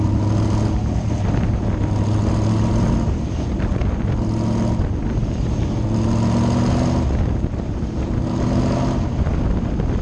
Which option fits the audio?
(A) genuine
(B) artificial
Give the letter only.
A